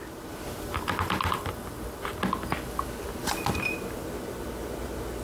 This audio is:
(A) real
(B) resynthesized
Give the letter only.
A